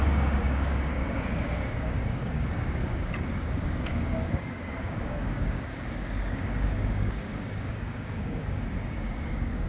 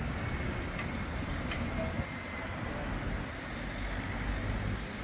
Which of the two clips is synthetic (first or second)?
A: first